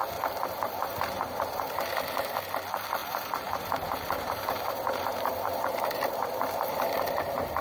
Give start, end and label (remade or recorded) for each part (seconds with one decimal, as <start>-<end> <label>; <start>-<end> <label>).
0.0-2.4 remade; 2.4-3.0 recorded; 3.0-7.6 remade